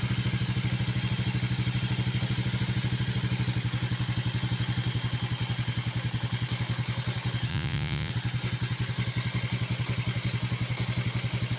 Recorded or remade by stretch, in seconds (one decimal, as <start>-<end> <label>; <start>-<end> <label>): 0.0-7.5 recorded; 7.5-8.1 remade; 8.1-11.6 recorded